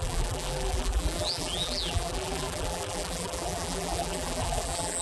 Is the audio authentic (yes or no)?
no